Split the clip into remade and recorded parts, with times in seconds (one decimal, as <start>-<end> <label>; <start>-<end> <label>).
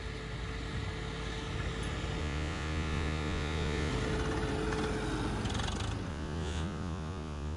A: 0.0-2.2 recorded; 2.2-3.9 remade; 3.9-6.1 recorded; 6.1-7.6 remade